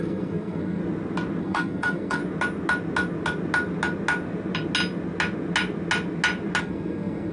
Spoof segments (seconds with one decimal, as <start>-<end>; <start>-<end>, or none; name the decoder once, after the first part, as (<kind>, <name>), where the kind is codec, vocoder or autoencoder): 0.0-0.8 (codec, SNAC); 1.4-2.2; 6.6-7.3